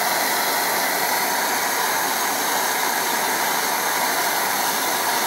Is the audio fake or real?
real